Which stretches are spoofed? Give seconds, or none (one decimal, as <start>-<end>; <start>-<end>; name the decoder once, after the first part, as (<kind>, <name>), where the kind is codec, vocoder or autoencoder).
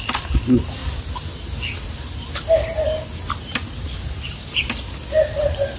none